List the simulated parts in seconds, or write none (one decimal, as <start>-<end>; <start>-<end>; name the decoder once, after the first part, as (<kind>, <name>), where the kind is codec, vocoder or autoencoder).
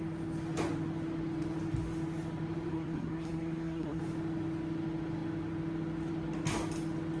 2.7-4.0 (codec, SNAC)